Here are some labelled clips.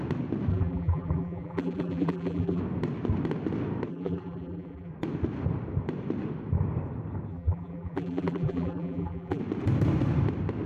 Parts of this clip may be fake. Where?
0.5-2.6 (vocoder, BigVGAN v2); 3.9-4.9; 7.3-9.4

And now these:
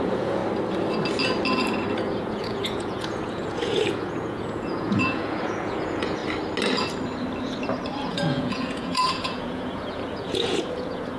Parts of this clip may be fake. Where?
0.0-0.4 (vocoder, Vocos); 1.9-6.2; 8.1-11.2

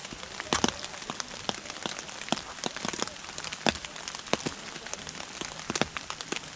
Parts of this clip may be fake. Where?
none